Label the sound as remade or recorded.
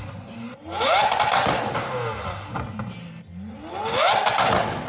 recorded